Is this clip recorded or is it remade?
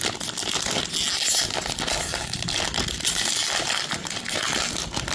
recorded